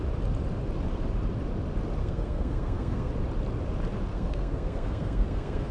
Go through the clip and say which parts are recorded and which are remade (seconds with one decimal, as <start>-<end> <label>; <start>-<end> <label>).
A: 0.0-2.0 recorded; 2.0-3.1 remade; 3.1-4.1 recorded; 4.1-5.7 remade